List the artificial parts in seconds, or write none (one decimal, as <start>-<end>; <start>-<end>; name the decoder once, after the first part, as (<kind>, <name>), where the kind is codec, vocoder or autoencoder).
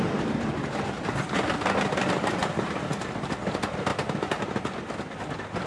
none